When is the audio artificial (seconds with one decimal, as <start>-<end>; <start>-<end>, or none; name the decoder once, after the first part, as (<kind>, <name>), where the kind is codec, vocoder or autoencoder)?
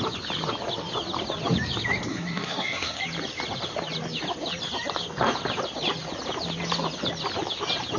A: 2.1-3.0 (codec, SNAC)